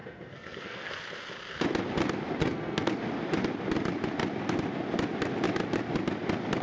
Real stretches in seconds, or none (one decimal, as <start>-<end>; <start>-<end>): 0.9-2.4; 2.9-6.6